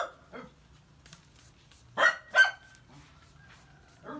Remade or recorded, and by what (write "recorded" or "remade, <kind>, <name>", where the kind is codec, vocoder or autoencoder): recorded